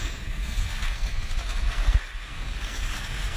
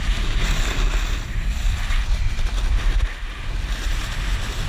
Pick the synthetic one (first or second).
first